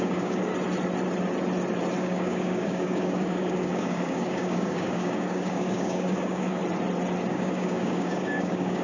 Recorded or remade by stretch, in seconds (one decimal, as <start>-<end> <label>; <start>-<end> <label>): 0.0-0.5 remade; 0.5-2.0 recorded; 2.0-6.6 remade; 6.6-7.3 recorded; 7.3-8.8 remade